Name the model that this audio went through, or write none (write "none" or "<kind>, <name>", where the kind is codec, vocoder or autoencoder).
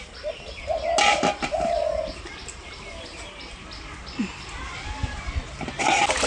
none